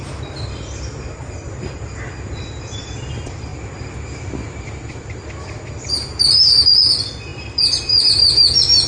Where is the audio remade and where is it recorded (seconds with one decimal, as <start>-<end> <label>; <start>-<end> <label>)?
0.0-8.9 recorded